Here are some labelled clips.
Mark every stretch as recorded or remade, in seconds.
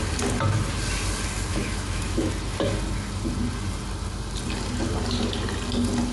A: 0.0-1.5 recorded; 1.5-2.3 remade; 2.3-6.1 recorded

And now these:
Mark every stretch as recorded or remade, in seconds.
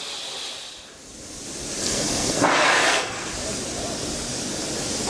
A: 0.0-1.8 recorded; 1.8-3.3 remade; 3.3-5.1 recorded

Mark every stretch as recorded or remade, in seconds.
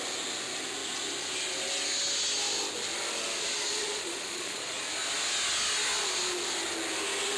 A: 0.0-3.7 recorded; 3.7-4.8 remade; 4.8-7.4 recorded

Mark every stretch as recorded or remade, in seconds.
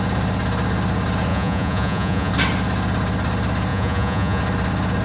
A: 0.0-1.3 recorded; 1.3-2.3 remade; 2.3-3.7 recorded; 3.7-4.4 remade; 4.4-5.0 recorded